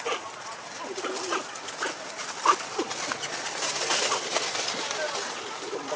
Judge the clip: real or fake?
real